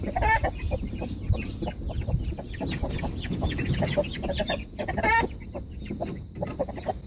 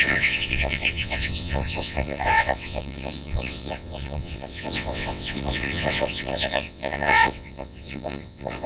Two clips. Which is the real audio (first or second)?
first